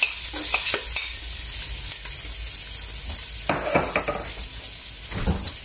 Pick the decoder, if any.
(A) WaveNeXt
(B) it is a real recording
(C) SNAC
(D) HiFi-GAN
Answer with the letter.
B